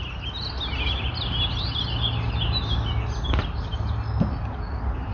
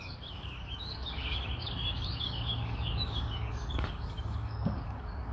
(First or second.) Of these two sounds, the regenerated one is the second